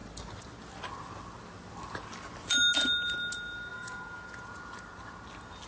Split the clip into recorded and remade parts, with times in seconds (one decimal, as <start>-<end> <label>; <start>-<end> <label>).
0.0-3.7 recorded; 3.7-4.8 remade; 4.8-5.7 recorded